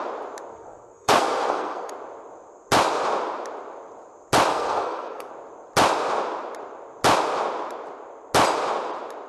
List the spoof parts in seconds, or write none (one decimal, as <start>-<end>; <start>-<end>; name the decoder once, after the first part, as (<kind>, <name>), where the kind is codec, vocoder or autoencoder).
0.5-1.9 (codec, SNAC); 4.5-5.3